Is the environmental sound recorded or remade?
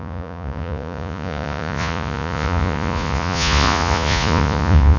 remade